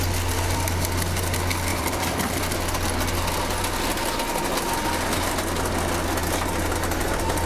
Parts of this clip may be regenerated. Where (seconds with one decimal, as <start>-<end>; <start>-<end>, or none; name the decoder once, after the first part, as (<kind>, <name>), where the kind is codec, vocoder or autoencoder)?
1.7-2.4 (vocoder, BigVGAN v2)